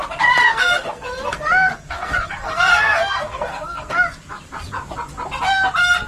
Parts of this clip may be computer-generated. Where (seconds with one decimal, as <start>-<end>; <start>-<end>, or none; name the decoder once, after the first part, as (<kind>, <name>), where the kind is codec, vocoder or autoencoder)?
0.4-4.0 (codec, SNAC)